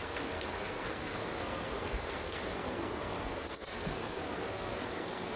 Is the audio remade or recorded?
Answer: remade